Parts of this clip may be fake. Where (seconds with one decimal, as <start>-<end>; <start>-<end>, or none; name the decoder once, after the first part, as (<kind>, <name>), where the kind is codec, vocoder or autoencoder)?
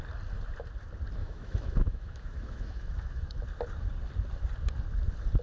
1.2-3.4 (autoencoder, DAC-VAE)